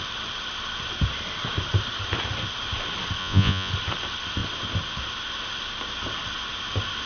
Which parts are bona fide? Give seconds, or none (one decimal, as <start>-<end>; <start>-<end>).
0.0-3.2; 3.7-7.1